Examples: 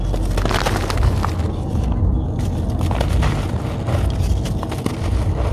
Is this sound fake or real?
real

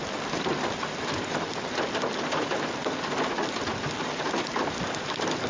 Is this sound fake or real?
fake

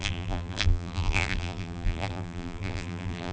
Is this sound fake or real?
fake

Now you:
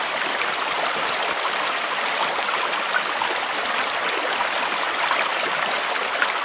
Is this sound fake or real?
real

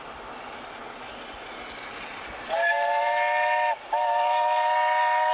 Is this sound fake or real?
real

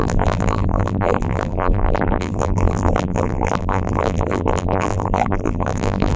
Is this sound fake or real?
fake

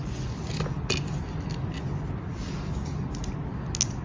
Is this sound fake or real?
real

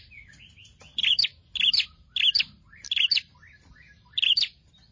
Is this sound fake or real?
fake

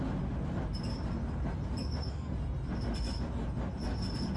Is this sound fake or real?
real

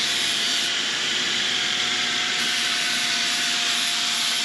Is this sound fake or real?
fake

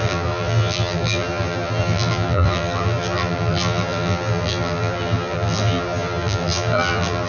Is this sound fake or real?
fake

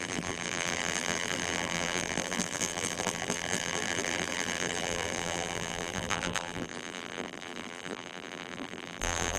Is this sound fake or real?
fake